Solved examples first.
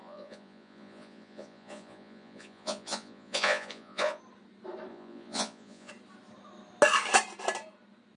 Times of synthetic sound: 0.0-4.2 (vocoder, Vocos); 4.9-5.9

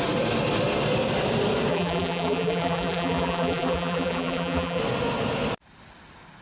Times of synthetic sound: 1.7-4.8 (vocoder, BigVGAN v2)

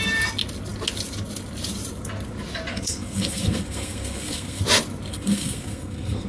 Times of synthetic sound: 2.7-4.6 (codec, SNAC); 5.1-6.3

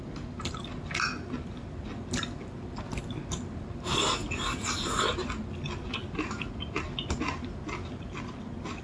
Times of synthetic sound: 6.0-6.8 (vocoder, BigVGAN v2)

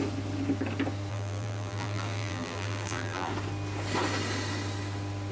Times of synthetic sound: 1.1-3.3 (vocoder, BigVGAN v2)

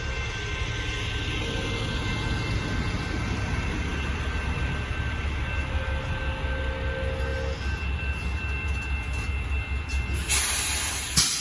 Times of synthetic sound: none

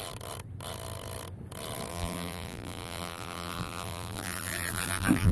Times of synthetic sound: 1.9-5.3 (vocoder, BigVGAN v2)